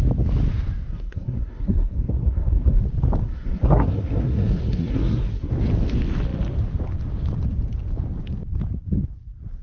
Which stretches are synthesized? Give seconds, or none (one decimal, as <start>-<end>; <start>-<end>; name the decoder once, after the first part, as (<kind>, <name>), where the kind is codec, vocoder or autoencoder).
0.9-2.8 (codec, SNAC); 3.2-5.5